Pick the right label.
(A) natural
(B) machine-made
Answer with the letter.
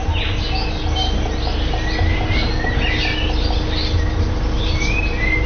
A